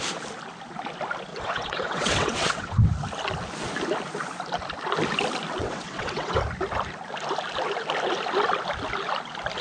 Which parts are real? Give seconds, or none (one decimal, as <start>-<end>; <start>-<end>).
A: 0.0-1.3; 2.9-5.6; 6.4-9.6

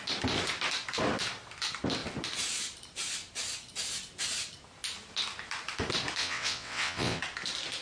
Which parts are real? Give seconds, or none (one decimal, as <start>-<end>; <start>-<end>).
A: 0.0-6.2; 7.2-7.8

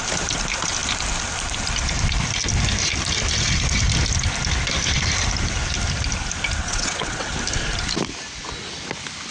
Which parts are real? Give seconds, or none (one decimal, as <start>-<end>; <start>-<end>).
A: 0.0-6.6; 7.3-9.3

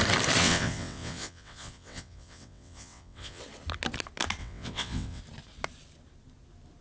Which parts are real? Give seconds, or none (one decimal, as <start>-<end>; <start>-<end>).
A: 0.0-0.4; 3.4-4.4; 5.2-6.8